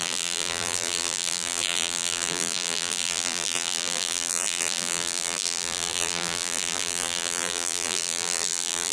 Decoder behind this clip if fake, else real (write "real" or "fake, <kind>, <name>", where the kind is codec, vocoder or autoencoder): fake, vocoder, BigVGAN v2